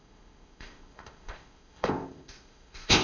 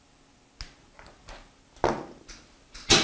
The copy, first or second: first